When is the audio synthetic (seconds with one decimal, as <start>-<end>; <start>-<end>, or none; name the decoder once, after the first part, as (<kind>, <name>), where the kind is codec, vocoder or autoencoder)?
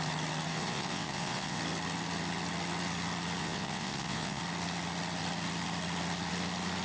0.5-1.6 (vocoder, WaveNeXt); 3.4-4.4